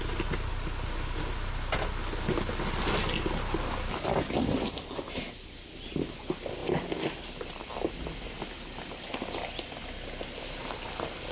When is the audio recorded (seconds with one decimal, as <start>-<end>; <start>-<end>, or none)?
0.0-11.3

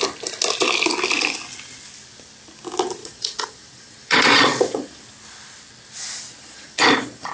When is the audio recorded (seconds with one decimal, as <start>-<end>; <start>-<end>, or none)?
0.0-3.0; 5.0-6.4

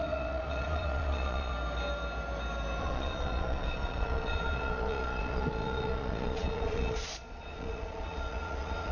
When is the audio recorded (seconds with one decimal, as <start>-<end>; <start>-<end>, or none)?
1.5-2.8

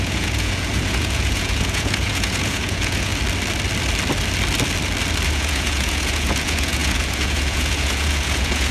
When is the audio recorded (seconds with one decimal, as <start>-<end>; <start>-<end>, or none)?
3.1-5.3